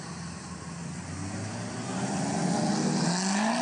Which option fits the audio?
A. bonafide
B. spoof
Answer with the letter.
A